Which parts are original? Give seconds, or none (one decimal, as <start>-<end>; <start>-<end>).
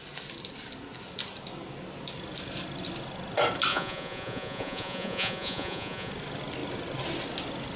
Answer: 0.0-3.7; 6.1-7.8